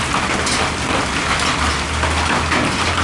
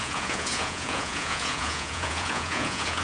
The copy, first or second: second